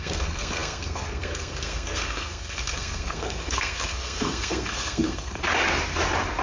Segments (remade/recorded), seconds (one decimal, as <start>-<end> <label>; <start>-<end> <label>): 0.0-5.4 remade; 5.4-6.4 recorded